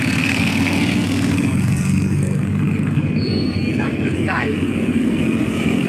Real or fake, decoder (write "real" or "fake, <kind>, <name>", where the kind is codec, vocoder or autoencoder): fake, codec, SNAC